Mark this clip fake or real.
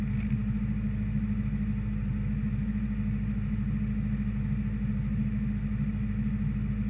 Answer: real